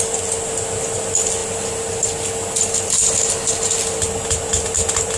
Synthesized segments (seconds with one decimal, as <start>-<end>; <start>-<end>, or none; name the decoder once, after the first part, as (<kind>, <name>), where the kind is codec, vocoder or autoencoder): none

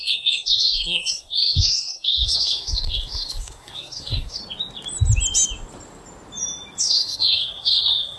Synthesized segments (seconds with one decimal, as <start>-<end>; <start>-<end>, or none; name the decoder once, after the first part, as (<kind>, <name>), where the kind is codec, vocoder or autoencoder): 0.0-4.4 (codec, SNAC); 6.8-8.2

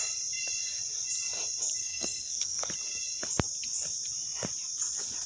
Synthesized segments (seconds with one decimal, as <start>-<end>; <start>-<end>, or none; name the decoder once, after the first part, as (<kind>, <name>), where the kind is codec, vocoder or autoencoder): 1.8-2.7 (codec, SNAC)

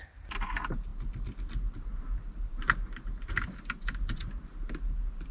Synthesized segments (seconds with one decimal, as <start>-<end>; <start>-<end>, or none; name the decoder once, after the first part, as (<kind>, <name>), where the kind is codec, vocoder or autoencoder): none